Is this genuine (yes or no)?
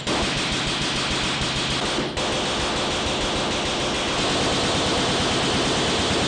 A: yes